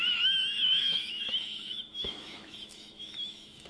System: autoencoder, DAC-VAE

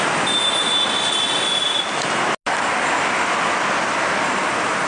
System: none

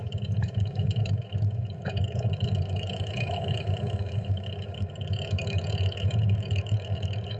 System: autoencoder, DAC-VAE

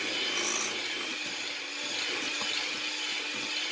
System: none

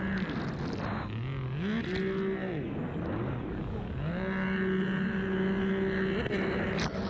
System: none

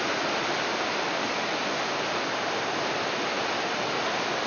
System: none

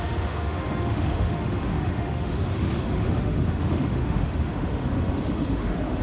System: autoencoder, DAC-VAE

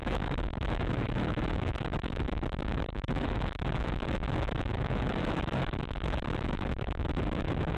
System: autoencoder, DAC-VAE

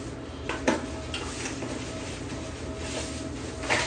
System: none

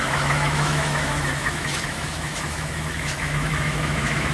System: autoencoder, DAC-VAE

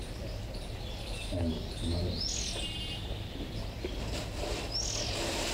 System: none